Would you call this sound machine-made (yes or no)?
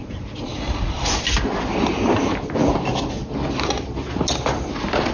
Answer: no